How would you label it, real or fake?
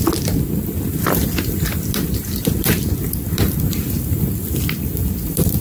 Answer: fake